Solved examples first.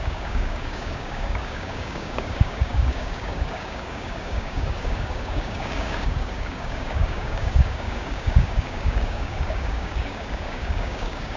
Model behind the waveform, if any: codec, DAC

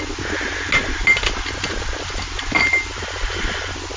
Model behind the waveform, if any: none